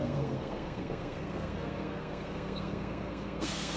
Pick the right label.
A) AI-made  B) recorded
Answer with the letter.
A